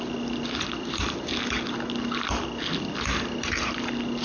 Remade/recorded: recorded